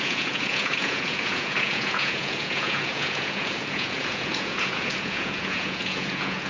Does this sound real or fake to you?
fake